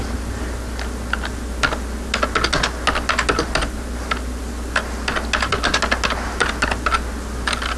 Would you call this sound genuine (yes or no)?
yes